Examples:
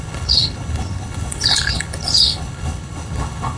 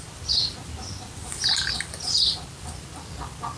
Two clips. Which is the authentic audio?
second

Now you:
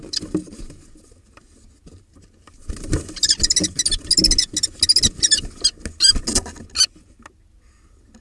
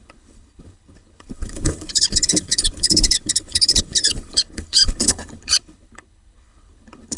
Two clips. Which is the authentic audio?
first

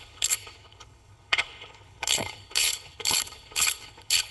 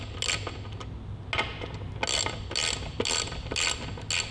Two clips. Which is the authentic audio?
second